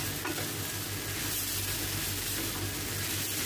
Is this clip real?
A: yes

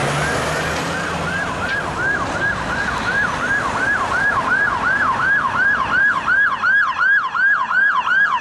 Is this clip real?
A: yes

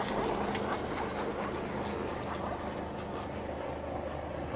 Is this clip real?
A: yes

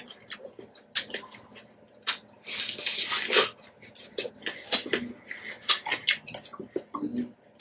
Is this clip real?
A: yes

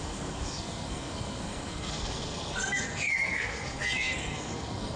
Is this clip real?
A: no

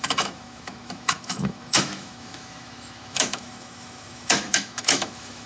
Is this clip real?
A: no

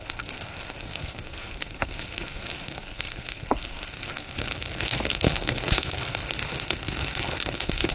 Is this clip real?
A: no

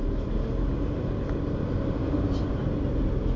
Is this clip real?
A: yes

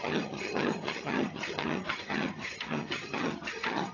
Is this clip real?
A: no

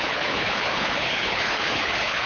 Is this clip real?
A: no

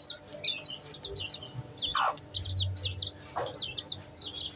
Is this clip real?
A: yes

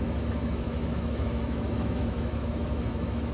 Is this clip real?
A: no